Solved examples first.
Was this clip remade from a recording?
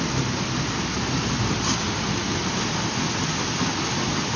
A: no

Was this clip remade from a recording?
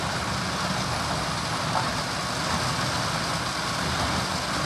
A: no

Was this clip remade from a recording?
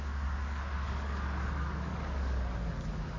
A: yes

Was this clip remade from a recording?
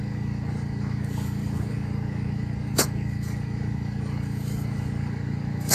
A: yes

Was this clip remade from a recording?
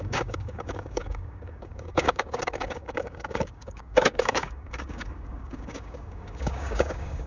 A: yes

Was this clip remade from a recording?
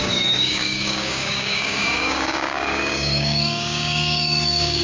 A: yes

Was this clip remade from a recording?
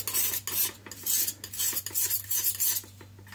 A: no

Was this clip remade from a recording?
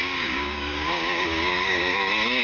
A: yes